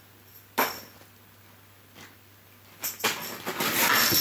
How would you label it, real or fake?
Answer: real